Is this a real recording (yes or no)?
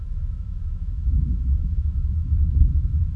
no